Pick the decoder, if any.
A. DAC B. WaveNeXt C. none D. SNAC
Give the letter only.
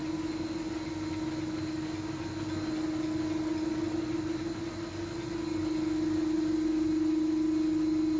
C